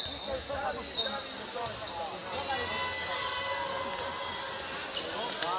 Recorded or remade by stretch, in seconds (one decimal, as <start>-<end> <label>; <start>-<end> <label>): 0.0-5.6 recorded